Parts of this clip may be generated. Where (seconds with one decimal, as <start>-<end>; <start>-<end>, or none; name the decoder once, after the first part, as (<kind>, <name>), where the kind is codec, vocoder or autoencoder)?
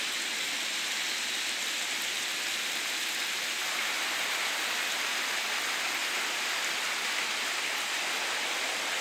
none